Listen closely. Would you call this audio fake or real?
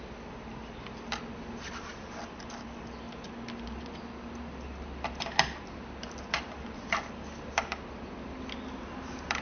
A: fake